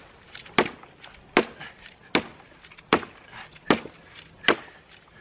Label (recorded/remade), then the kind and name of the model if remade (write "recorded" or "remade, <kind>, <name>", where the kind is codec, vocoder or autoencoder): recorded